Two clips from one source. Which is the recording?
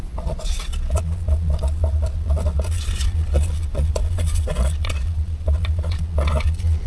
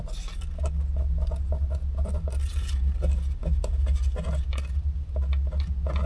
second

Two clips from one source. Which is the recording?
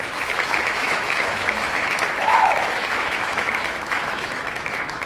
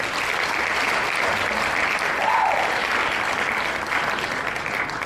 second